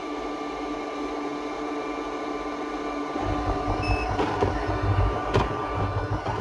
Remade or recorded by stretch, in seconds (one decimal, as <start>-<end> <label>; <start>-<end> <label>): 0.0-6.4 remade